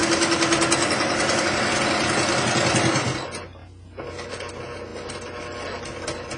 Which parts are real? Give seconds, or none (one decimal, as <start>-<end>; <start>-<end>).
0.0-6.4